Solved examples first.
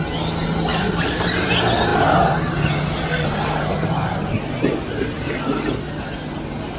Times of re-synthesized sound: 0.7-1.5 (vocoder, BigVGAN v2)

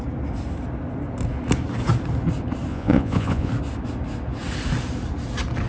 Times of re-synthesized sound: 2.7-3.5 (vocoder, Vocos)

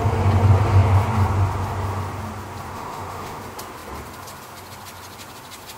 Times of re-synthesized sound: 2.7-3.4 (autoencoder, DAC-VAE)

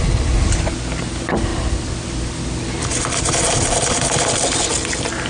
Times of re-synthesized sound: none